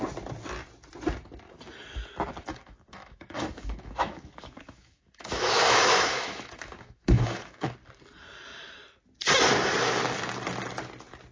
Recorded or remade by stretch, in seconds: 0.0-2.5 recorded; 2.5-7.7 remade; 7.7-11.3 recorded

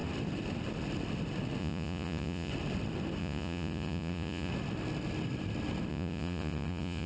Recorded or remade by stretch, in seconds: 0.0-1.6 recorded; 1.6-2.5 remade; 2.5-3.2 recorded; 3.2-4.5 remade; 4.5-5.9 recorded; 5.9-7.1 remade

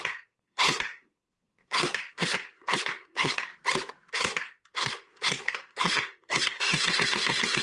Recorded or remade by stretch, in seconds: 0.0-3.5 remade; 3.5-4.1 recorded; 4.1-7.6 remade

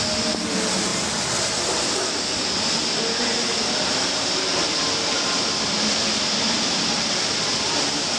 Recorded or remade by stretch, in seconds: 0.0-8.2 recorded